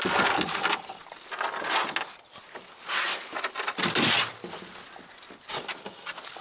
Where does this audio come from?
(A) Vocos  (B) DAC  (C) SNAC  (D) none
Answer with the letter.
D